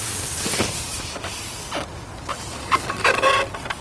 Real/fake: real